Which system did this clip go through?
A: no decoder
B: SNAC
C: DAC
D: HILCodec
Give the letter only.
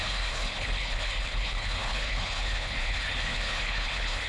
D